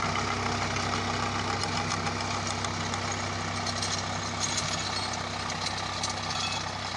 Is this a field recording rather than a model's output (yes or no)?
yes